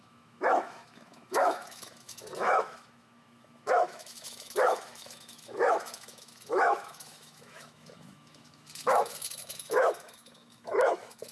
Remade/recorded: remade